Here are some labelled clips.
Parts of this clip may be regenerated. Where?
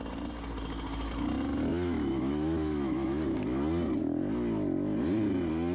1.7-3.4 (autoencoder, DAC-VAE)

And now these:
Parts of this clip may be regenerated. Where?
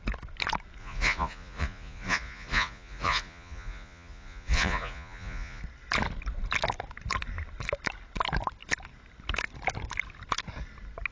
0.8-5.6 (vocoder, Vocos)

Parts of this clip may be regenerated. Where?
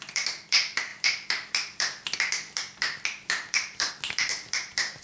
0.0-5.0 (vocoder, BigVGAN v2)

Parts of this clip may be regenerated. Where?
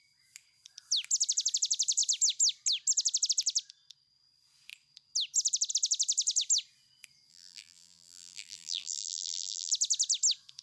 7.3-9.7 (vocoder, BigVGAN v2)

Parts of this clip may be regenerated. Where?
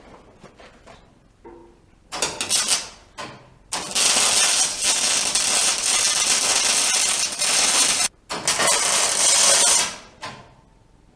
none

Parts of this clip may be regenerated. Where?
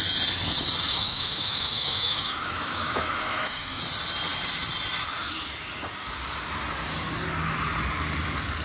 0.9-3.8 (autoencoder, DAC-VAE)